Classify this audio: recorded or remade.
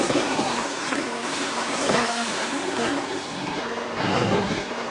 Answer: remade